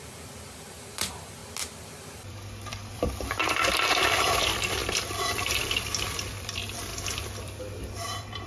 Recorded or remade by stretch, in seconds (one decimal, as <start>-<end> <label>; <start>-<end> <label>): 0.0-1.4 remade; 1.4-2.3 recorded; 2.3-8.5 remade